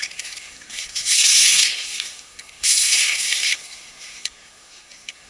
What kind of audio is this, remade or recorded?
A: remade